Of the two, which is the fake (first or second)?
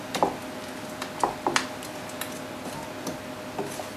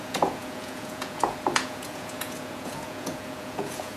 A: second